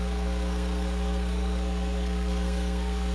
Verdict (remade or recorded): remade